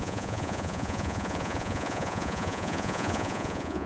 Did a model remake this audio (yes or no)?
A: yes